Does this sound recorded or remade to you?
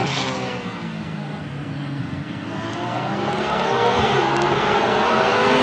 remade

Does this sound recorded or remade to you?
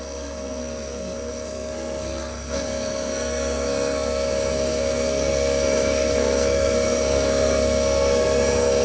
remade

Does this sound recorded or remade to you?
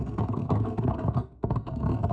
remade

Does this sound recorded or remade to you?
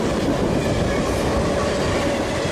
recorded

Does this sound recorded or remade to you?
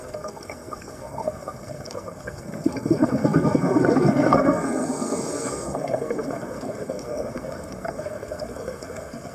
remade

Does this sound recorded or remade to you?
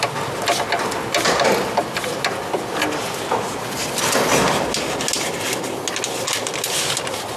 recorded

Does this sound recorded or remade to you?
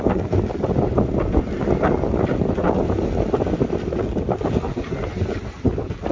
recorded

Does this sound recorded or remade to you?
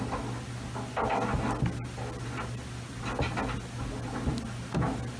recorded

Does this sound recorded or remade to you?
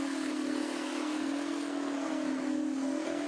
remade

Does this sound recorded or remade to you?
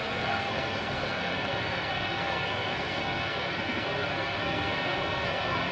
remade